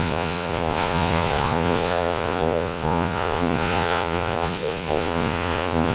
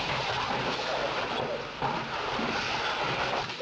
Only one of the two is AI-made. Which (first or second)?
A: first